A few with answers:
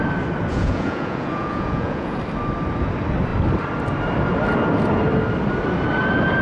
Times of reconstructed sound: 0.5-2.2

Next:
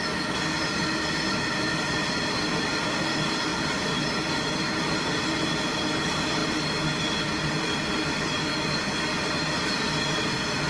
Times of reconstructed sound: none

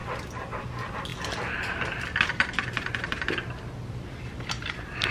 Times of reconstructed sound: none

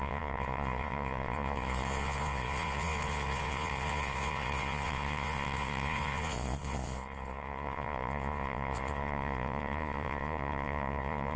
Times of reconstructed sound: 0.0-11.4

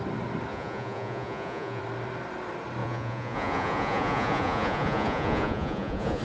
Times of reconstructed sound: 0.5-1.8; 2.8-6.2

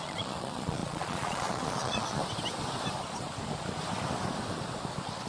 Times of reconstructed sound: 0.0-2.2

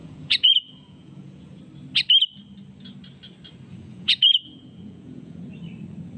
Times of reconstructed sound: 0.0-1.6; 3.7-5.4